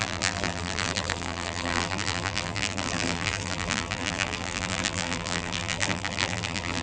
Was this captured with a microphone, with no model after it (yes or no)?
no